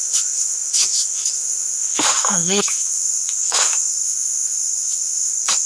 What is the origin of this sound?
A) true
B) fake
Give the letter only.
B